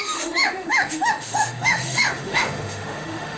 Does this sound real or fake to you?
fake